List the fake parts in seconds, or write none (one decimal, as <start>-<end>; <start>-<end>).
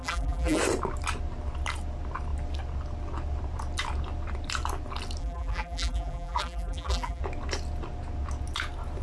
0.0-0.6; 5.2-7.2